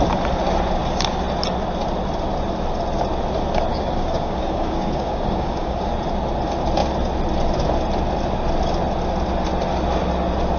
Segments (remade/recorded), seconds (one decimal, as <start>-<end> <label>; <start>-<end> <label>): 0.0-3.7 recorded; 3.7-5.9 remade; 5.9-10.6 recorded